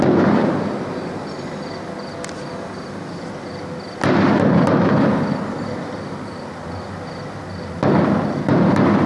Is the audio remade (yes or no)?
no